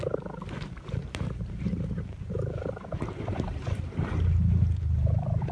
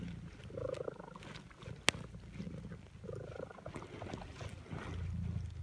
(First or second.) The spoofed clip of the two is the first